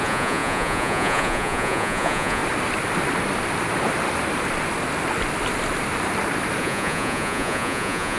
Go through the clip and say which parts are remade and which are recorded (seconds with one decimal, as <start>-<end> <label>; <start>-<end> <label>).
0.0-2.4 remade; 2.4-6.6 recorded; 6.6-8.2 remade

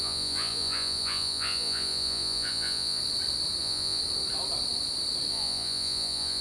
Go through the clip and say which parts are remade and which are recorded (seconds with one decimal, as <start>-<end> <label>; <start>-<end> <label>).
0.0-3.0 remade; 3.0-3.6 recorded; 3.6-4.0 remade; 4.0-5.3 recorded; 5.3-6.4 remade

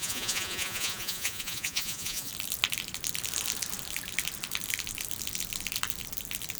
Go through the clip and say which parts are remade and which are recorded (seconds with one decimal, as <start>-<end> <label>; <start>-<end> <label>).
0.0-2.3 remade; 2.3-6.6 recorded

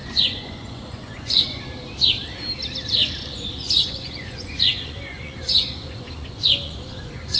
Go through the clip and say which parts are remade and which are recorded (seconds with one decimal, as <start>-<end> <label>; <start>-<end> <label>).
0.0-1.6 remade; 1.6-3.0 recorded; 3.0-7.4 remade

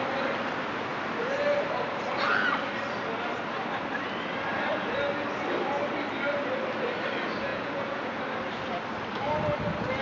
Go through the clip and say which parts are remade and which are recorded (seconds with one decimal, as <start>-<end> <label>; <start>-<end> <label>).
0.0-7.5 recorded; 7.5-8.2 remade; 8.2-10.0 recorded

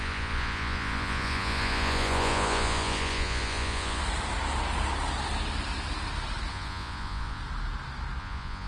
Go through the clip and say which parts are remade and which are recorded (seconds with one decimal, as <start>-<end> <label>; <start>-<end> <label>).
0.0-4.0 remade; 4.0-6.5 recorded; 6.5-7.4 remade; 7.4-8.2 recorded; 8.2-8.7 remade